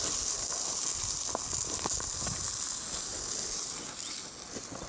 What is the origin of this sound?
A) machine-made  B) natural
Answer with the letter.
B